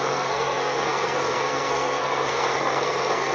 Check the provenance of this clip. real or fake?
fake